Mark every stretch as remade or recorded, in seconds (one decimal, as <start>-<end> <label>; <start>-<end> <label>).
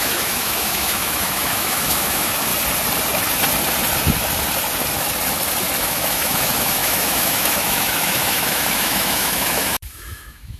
0.0-2.5 remade; 2.5-5.8 recorded; 5.8-10.6 remade